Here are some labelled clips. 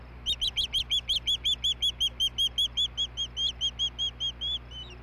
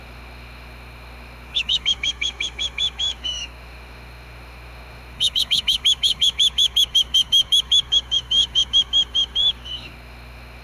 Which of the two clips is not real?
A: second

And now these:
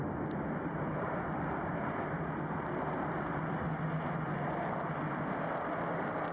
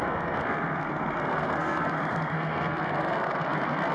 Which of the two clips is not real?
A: second